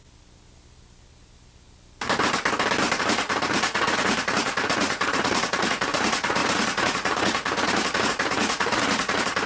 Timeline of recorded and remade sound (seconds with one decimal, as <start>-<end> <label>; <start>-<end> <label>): 0.0-3.0 recorded; 3.0-9.5 remade